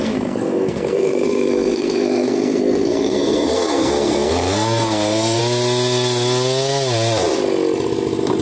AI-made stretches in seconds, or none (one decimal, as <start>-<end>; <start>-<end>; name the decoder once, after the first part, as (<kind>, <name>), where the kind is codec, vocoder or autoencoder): 0.0-5.4 (codec, SNAC)